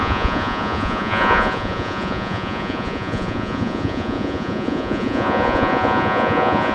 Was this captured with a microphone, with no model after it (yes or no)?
no